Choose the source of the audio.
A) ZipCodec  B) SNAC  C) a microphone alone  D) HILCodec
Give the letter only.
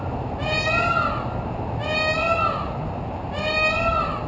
C